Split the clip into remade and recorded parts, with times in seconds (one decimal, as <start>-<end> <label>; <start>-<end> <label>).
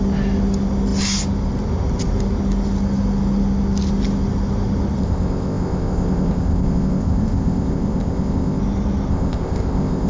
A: 0.0-5.0 recorded; 5.0-8.6 remade; 8.6-9.1 recorded; 9.1-10.1 remade